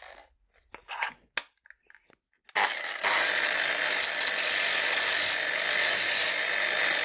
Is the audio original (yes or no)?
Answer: yes